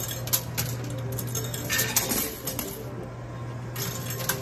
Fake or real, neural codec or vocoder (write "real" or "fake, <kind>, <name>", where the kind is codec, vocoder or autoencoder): real